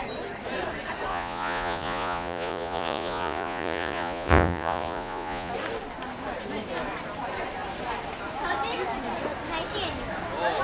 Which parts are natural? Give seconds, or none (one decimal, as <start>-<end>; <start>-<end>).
0.0-1.1; 5.5-10.6